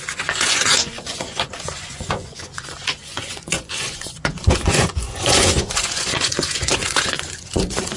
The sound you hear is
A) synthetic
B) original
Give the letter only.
A